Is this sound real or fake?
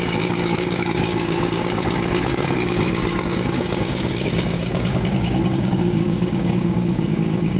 fake